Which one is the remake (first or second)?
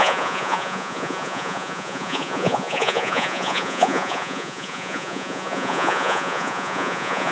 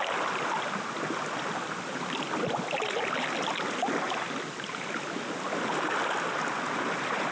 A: first